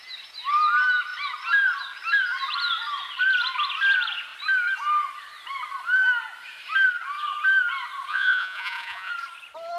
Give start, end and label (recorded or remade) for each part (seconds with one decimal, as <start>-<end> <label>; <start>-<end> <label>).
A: 0.0-8.1 recorded; 8.1-9.1 remade; 9.1-9.8 recorded